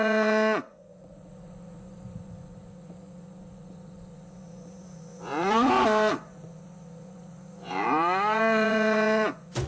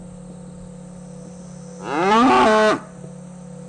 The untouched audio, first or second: second